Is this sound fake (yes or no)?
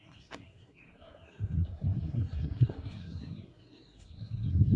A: yes